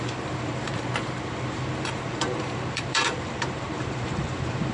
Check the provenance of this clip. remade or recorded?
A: remade